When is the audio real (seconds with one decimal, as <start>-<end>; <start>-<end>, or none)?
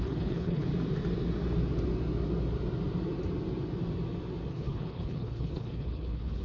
0.7-4.5